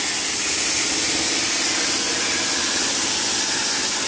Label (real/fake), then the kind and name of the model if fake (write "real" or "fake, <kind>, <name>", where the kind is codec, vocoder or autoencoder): real